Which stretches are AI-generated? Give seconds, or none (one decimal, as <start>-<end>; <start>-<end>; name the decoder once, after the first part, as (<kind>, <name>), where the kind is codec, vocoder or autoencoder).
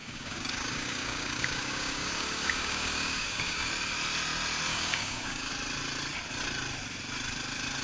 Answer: 0.0-3.7 (codec, DAC); 4.7-5.5